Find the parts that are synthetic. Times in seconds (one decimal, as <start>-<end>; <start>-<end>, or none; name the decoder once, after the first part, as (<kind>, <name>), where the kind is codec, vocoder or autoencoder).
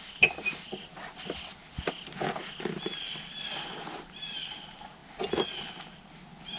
none